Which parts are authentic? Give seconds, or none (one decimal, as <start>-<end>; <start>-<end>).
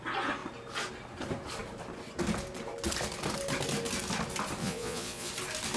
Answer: 0.0-4.6; 5.3-5.8